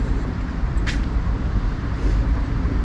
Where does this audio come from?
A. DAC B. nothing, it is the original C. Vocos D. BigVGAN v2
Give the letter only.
D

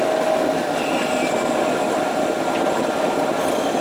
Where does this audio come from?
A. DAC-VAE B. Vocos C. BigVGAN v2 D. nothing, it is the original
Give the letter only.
D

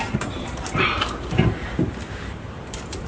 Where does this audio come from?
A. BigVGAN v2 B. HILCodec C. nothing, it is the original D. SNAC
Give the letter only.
A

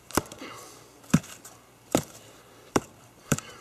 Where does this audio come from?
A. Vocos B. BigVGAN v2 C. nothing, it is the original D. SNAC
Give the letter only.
B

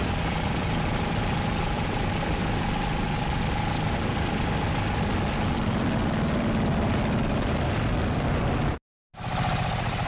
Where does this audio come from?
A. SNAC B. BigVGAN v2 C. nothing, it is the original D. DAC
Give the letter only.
C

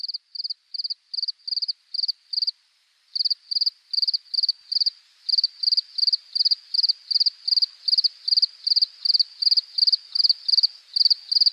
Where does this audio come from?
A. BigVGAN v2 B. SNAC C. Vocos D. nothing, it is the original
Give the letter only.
D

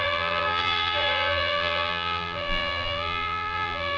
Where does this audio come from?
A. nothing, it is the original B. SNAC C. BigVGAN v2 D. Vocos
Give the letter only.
C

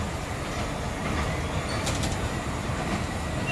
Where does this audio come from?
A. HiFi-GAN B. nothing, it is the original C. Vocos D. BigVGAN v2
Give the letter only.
B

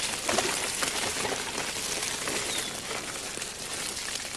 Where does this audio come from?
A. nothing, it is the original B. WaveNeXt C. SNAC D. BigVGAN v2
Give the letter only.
A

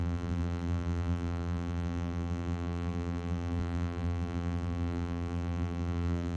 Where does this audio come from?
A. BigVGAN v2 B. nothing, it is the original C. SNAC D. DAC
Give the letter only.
A